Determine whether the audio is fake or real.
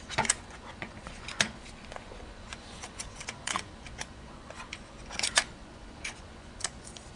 fake